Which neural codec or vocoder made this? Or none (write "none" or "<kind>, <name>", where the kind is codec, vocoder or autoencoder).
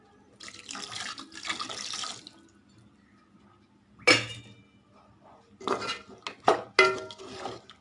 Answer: none